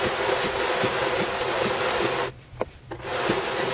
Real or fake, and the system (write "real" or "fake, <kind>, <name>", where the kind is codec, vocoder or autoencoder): real